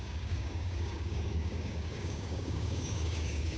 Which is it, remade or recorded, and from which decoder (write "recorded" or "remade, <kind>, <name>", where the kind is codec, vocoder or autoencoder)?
remade, codec, DAC